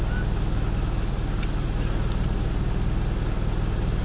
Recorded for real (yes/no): yes